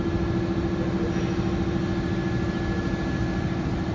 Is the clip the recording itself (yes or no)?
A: yes